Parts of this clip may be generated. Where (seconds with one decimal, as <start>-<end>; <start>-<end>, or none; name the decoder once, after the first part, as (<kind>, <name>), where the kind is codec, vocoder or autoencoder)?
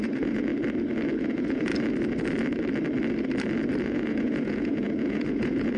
0.0-0.5 (vocoder, Vocos); 1.2-1.7; 3.8-5.8